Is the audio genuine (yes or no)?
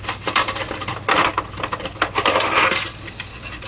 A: yes